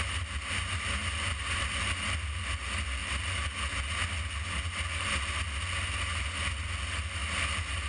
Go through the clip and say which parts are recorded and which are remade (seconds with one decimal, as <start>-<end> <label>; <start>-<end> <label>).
0.0-7.9 recorded